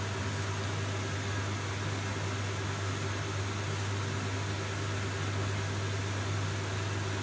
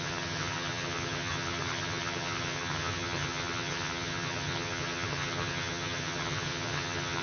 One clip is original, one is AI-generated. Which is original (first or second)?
first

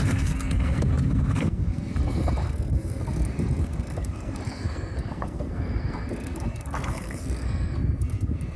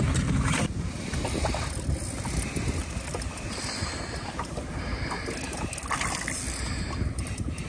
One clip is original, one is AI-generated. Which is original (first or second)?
second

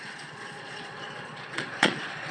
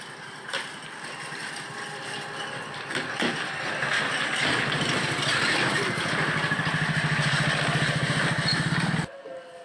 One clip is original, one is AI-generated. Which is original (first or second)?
second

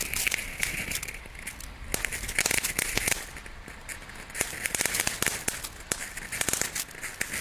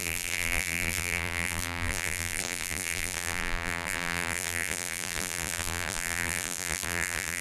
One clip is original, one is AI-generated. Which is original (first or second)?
first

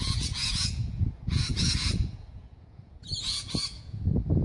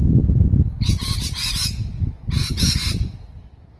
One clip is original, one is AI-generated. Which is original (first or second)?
second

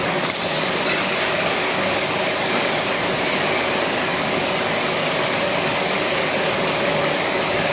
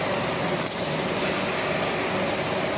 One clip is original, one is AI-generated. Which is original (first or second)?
second